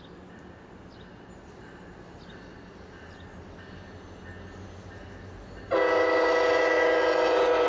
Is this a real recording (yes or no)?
yes